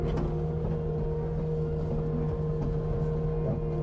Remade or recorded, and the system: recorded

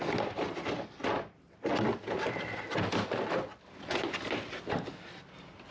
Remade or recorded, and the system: recorded